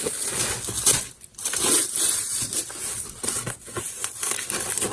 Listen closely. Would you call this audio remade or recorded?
recorded